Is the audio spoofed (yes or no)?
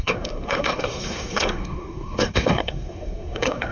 yes